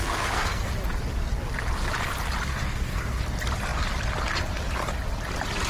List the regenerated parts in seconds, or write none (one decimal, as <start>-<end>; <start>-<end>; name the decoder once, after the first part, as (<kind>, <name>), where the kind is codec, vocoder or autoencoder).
0.0-0.7 (codec, SNAC); 2.5-3.2